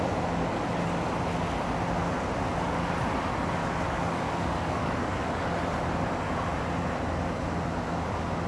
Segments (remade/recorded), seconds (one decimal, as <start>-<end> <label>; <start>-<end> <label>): 0.0-3.6 recorded; 3.6-5.5 remade; 5.5-8.5 recorded